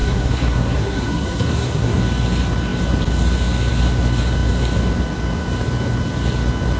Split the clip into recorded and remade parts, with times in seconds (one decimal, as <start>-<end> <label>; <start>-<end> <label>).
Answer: 0.0-2.0 remade; 2.0-6.8 recorded